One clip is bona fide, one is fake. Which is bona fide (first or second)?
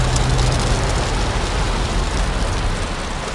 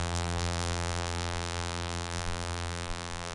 first